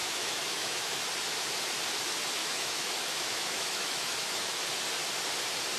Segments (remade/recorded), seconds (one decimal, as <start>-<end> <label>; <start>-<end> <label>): 0.0-1.0 remade; 1.0-2.4 recorded; 2.4-4.5 remade; 4.5-5.8 recorded